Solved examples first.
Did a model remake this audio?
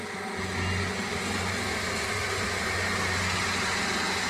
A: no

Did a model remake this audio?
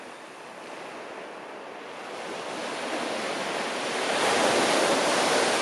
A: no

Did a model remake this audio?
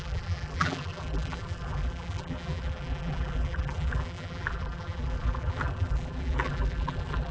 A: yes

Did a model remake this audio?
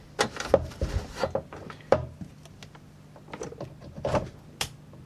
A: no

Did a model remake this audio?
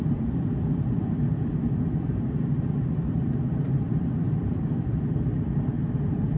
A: yes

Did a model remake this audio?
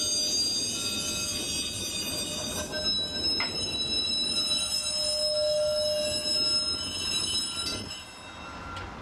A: no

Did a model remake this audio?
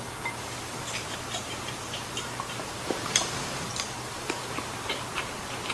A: yes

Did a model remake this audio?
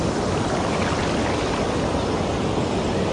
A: no